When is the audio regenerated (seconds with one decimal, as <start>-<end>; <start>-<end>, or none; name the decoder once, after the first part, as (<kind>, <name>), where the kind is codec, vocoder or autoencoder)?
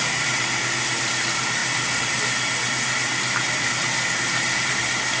none